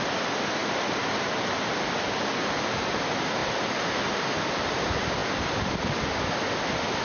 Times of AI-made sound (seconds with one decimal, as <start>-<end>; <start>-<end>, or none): none